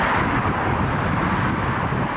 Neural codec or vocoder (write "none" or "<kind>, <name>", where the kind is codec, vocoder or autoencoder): none